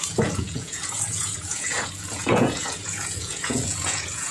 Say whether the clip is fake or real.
fake